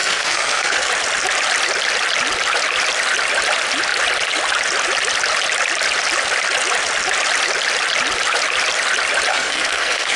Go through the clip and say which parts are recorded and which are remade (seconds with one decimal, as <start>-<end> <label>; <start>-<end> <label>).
0.0-0.9 remade; 0.9-9.3 recorded; 9.3-10.2 remade